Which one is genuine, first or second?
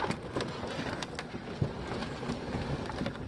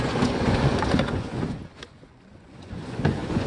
first